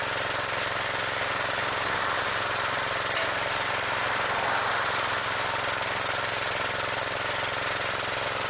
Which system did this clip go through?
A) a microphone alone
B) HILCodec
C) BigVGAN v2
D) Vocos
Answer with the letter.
A